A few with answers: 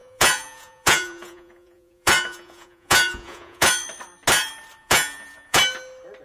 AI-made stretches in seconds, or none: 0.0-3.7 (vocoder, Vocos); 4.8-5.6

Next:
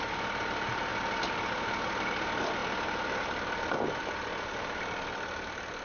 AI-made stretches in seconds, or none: none

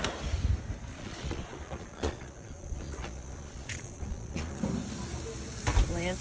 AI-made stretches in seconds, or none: 0.9-4.6 (vocoder, Vocos)

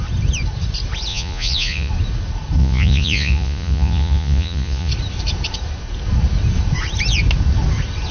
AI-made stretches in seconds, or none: 1.1-1.9 (vocoder, Vocos); 2.6-4.9

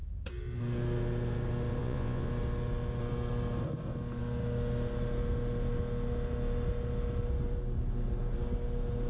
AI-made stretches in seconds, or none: 1.8-2.3 (vocoder, Vocos)

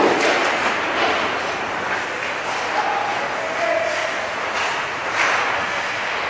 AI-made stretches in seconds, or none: 4.0-5.1 (vocoder, Vocos)

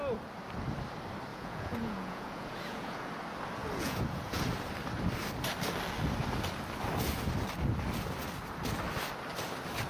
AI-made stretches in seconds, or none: 1.3-3.1 (vocoder, Vocos); 3.6-4.3